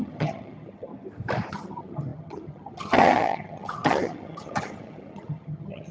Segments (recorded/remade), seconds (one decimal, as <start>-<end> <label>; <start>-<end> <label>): 0.0-0.9 remade; 0.9-1.5 recorded; 1.5-5.9 remade